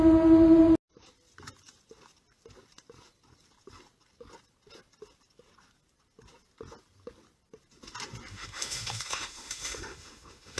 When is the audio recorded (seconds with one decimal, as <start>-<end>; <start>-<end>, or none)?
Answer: 0.0-8.3